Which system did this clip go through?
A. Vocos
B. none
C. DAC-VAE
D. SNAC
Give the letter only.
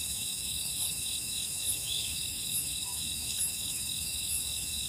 C